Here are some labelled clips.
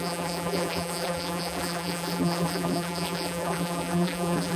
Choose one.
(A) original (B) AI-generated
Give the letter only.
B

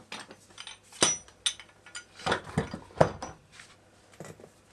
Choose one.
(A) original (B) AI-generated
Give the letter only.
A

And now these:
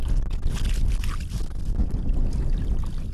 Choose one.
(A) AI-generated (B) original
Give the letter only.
B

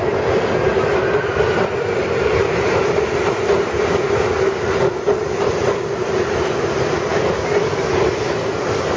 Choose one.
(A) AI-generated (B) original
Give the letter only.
B